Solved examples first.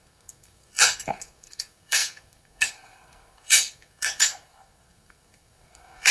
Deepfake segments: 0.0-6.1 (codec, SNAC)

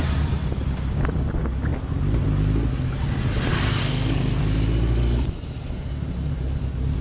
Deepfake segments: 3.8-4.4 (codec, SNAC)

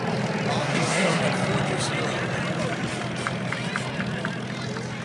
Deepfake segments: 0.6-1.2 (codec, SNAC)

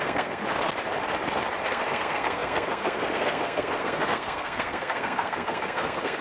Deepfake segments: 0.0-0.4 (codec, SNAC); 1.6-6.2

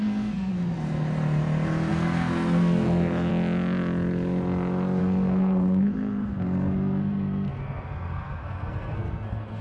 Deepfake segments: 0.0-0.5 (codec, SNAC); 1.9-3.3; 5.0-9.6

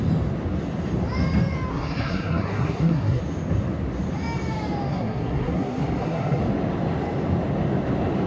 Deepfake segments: 1.7-3.2 (codec, SNAC); 4.9-6.4

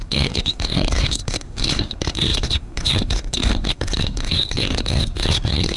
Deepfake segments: 0.0-5.8 (codec, SNAC)